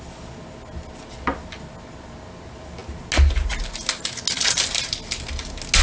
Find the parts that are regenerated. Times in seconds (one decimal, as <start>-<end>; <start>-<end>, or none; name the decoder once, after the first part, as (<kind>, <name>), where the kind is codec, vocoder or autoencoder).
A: none